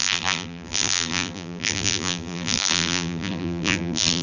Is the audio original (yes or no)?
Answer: no